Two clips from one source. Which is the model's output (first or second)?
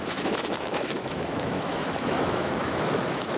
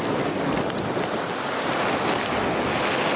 first